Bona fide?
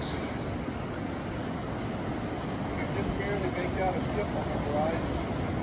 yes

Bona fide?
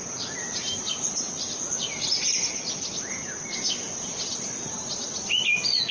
yes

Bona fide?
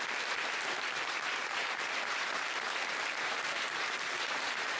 no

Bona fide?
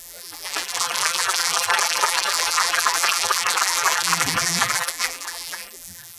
no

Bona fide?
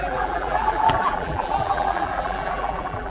no